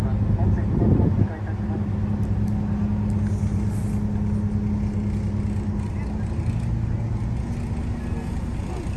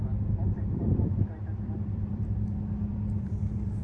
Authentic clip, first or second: first